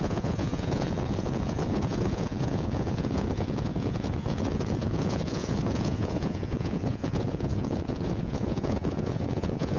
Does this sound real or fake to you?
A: fake